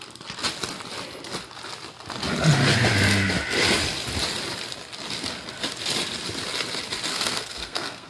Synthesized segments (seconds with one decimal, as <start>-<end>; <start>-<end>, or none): 7.1-8.1